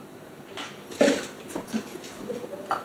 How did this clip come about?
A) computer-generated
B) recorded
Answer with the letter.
B